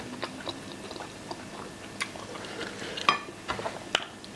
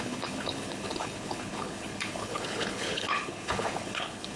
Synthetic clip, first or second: second